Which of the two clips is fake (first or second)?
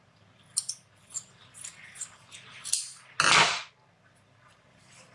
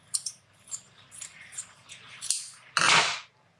second